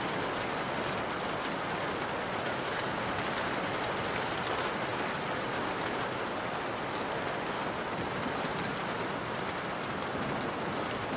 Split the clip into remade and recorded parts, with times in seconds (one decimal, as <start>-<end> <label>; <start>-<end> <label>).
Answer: 0.0-11.2 recorded